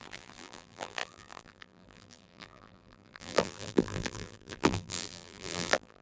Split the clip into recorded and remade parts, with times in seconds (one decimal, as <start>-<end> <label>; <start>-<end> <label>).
0.0-6.0 remade